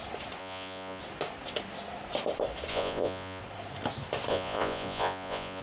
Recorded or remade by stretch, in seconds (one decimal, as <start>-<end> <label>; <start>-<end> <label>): 0.0-0.4 recorded; 0.4-1.0 remade; 1.0-2.7 recorded; 2.7-3.4 remade; 3.4-4.3 recorded; 4.3-5.6 remade